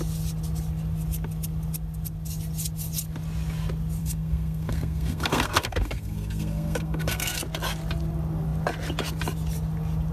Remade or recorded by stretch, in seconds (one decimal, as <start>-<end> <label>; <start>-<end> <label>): 0.0-4.0 recorded; 4.0-7.4 remade; 7.4-10.1 recorded